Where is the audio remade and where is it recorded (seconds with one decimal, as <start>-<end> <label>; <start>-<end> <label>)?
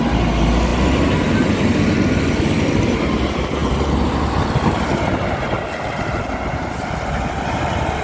0.0-8.0 recorded